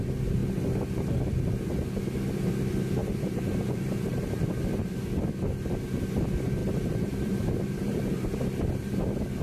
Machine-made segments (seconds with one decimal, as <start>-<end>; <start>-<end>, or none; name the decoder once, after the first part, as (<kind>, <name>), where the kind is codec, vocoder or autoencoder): 3.0-4.4 (vocoder, BigVGAN v2); 6.6-8.1

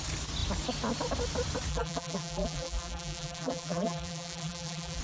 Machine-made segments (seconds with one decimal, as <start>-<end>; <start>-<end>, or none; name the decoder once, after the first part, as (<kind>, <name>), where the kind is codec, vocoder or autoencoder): 1.7-5.0 (vocoder, BigVGAN v2)

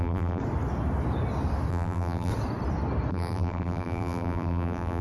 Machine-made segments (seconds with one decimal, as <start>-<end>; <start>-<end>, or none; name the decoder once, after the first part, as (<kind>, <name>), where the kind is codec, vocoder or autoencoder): 0.0-0.4 (vocoder, BigVGAN v2); 1.7-2.3; 3.1-5.0

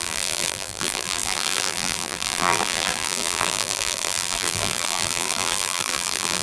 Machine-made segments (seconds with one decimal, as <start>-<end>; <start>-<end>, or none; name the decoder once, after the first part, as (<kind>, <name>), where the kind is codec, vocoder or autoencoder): 0.0-6.4 (vocoder, BigVGAN v2)

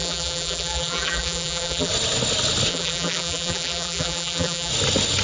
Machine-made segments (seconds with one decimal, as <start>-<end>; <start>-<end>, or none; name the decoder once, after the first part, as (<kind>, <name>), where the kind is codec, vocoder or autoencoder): 0.0-1.9 (vocoder, BigVGAN v2); 2.7-4.7